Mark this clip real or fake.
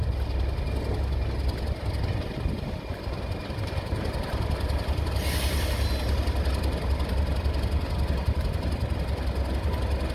real